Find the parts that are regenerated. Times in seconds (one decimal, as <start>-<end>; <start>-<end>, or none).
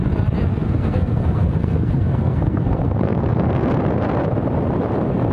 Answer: 0.5-3.7